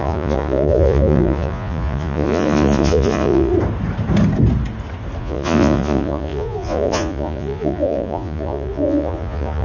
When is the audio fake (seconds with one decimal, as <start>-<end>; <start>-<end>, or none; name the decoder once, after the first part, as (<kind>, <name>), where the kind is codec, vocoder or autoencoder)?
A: 0.0-3.5 (vocoder, Vocos); 5.2-9.6